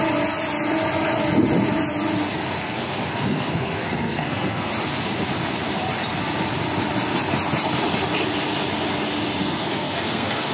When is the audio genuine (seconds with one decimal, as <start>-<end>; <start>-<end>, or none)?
0.0-2.6; 4.7-9.4